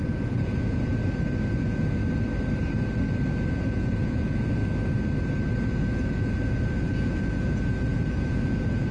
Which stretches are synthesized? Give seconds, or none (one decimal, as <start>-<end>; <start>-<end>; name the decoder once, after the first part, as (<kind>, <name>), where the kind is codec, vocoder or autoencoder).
0.0-0.9 (vocoder, Vocos); 1.5-2.0; 3.5-4.6; 5.7-8.9